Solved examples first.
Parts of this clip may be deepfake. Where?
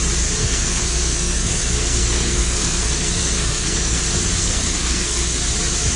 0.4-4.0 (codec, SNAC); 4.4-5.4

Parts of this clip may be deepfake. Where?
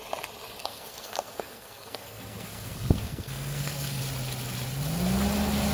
0.6-4.0 (codec, SNAC)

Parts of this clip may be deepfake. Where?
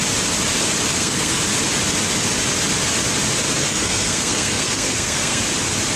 0.9-1.4 (codec, SNAC); 3.6-5.4